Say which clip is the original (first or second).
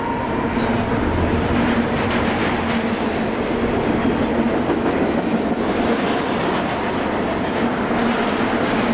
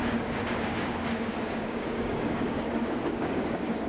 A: first